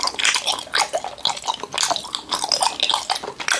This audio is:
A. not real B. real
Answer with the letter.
B